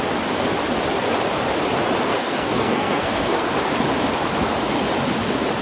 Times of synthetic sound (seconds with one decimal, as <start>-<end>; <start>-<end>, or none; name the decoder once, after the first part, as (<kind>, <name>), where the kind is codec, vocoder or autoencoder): 2.1-3.5 (codec, SNAC)